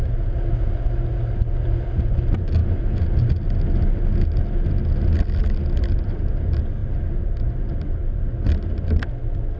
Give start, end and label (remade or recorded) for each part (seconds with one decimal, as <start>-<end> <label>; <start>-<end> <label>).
0.0-2.6 recorded; 2.6-3.3 remade; 3.3-9.6 recorded